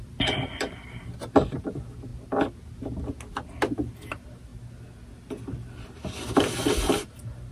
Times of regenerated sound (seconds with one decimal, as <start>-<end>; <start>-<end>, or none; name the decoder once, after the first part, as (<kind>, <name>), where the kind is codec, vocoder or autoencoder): 0.0-2.1 (vocoder, BigVGAN v2); 4.1-4.5